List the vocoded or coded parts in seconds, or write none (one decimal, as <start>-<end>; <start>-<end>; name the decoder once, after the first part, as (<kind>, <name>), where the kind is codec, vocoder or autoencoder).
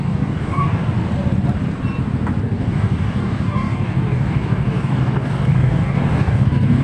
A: 0.0-0.8 (codec, DAC); 2.4-6.8